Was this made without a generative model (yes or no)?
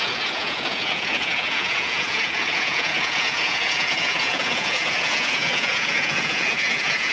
no